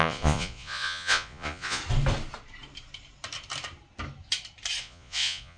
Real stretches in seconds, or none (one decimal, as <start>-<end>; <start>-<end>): 1.8-4.8